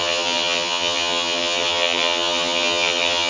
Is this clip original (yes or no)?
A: no